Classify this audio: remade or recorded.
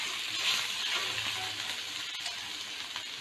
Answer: recorded